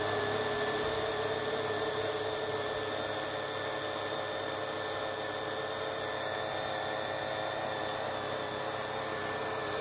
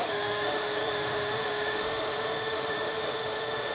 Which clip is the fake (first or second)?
second